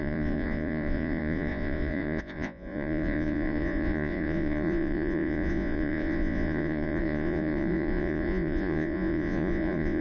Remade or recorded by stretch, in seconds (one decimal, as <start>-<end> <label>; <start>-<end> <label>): 0.0-10.0 remade